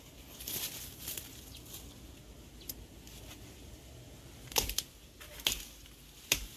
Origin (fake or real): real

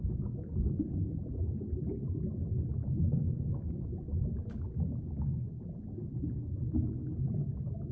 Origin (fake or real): real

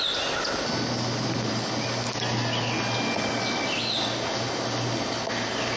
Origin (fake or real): real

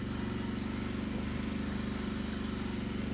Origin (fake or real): real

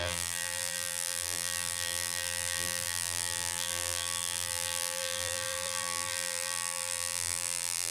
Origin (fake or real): fake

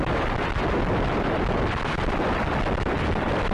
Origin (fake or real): fake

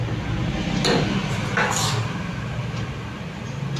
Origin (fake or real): real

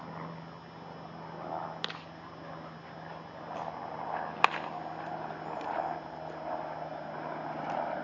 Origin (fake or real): fake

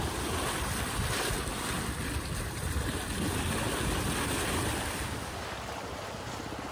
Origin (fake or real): real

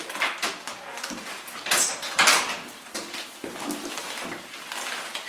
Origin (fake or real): fake